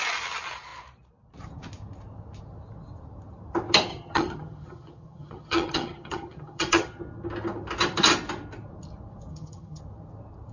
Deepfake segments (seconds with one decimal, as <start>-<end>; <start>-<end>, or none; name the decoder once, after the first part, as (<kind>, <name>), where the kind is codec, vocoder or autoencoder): 3.9-7.0 (vocoder, HiFi-GAN); 9.3-9.8